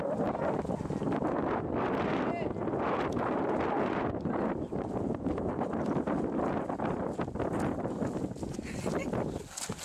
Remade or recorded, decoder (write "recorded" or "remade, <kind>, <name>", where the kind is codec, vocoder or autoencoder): recorded